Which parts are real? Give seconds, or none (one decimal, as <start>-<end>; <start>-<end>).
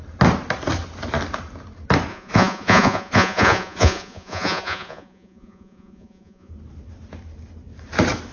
0.0-2.1; 6.5-8.3